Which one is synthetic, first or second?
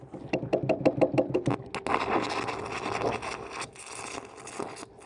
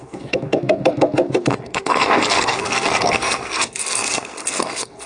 second